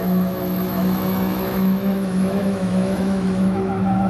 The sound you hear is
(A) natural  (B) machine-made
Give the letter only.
B